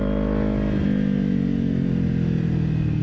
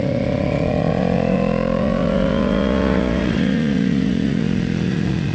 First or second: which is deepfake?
second